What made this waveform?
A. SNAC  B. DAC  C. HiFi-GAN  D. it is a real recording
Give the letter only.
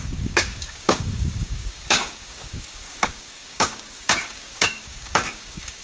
B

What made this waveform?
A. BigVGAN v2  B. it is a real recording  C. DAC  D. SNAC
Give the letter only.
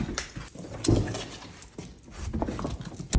B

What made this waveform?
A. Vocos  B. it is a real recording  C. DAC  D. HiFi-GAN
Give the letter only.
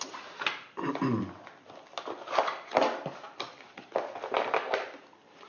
B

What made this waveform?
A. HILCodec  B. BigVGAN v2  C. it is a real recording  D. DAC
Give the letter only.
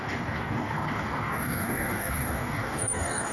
D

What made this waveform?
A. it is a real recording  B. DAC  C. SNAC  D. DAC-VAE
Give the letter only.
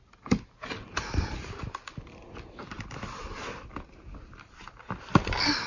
A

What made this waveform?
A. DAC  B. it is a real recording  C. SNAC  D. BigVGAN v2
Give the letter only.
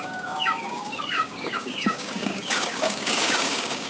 A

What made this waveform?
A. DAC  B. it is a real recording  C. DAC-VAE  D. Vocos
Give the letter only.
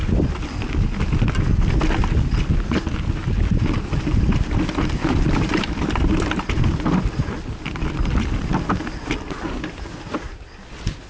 B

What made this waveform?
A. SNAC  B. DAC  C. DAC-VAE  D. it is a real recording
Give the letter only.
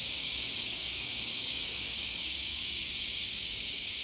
B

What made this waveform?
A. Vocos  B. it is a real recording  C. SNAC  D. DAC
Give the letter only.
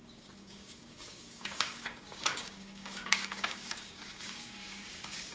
D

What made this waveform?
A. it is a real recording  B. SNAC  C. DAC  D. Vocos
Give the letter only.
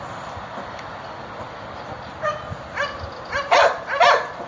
A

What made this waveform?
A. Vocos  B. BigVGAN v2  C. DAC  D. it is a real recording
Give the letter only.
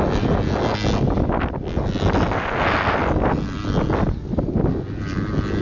D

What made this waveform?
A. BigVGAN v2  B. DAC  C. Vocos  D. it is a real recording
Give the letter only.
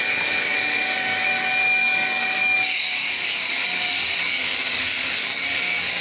B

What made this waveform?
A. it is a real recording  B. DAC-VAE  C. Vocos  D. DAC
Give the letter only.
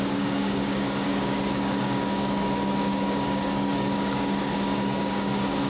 D